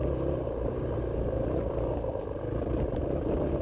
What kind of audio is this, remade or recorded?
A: remade